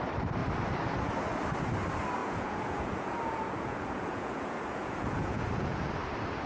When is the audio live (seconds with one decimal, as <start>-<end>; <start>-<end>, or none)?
0.0-2.2; 5.9-6.5